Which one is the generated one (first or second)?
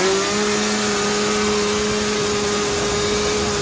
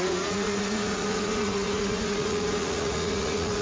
second